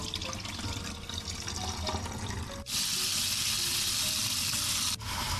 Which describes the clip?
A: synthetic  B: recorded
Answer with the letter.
B